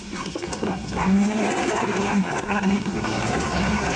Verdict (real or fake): fake